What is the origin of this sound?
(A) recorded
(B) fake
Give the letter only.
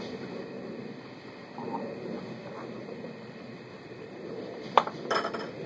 B